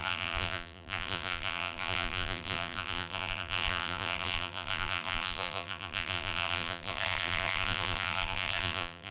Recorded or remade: remade